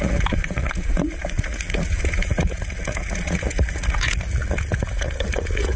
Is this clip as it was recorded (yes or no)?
no